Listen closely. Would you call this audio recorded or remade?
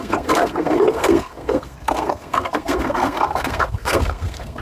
remade